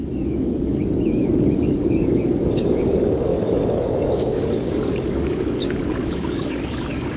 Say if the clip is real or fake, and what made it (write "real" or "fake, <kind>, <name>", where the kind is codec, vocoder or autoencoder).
fake, codec, DAC